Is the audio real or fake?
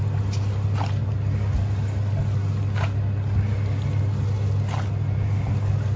real